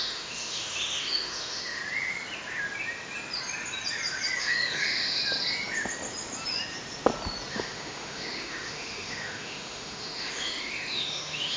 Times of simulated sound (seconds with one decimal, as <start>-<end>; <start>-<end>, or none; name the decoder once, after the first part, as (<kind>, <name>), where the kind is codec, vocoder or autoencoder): 0.0-1.8 (autoencoder, DAC-VAE); 4.4-5.2; 7.5-11.6